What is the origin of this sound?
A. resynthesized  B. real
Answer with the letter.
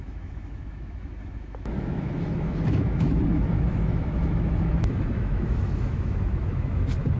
A